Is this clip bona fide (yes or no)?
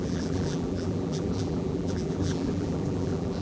no